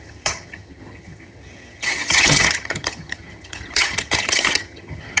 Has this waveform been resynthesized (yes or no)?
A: yes